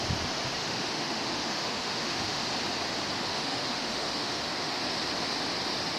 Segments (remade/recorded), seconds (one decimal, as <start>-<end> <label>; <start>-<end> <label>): 0.0-0.6 recorded; 0.6-2.4 remade; 2.4-3.3 recorded; 3.3-4.8 remade; 4.8-6.0 recorded